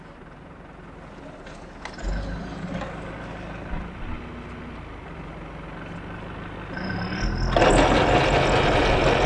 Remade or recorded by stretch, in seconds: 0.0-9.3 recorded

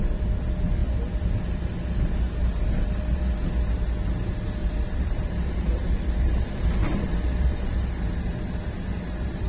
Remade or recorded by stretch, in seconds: 0.0-2.4 recorded; 2.4-3.2 remade; 3.2-4.6 recorded; 4.6-9.5 remade

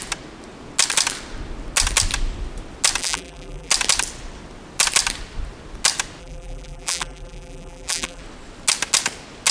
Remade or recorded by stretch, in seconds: 0.0-3.0 recorded; 3.0-3.7 remade; 3.7-6.2 recorded; 6.2-8.2 remade; 8.2-9.5 recorded